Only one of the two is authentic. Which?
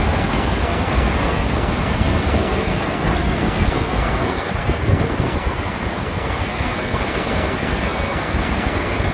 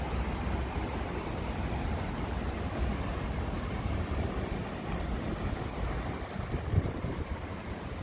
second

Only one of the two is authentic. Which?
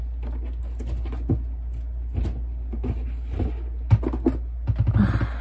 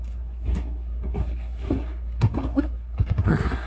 first